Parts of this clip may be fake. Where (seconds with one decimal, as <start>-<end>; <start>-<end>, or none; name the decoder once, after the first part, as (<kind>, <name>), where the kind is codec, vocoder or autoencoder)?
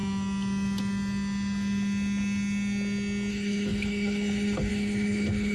3.3-5.5 (codec, HILCodec)